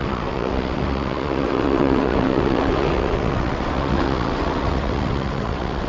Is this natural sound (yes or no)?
no